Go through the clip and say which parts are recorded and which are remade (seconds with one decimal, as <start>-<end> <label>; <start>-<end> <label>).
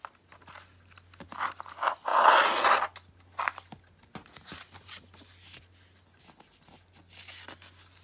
0.0-8.0 recorded